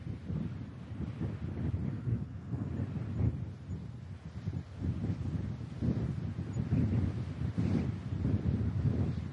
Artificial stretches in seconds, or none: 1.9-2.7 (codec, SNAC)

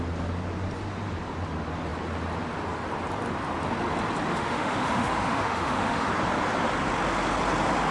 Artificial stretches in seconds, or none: 4.3-6.1 (autoencoder, DAC-VAE)

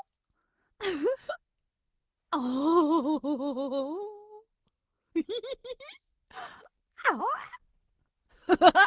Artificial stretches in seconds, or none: 1.2-1.9 (codec, SNAC)

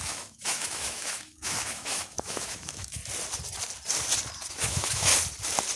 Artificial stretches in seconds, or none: 0.0-3.0 (autoencoder, DAC-VAE); 4.5-5.1

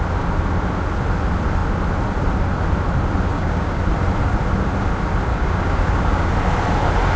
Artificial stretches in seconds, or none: 3.3-3.8 (codec, DAC); 5.3-6.3

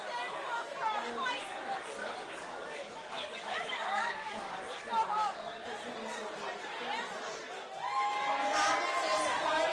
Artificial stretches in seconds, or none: 2.0-4.6 (codec, DAC)